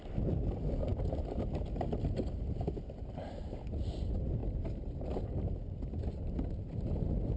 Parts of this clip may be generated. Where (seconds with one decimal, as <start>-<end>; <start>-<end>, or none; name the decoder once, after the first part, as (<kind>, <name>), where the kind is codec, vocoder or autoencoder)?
none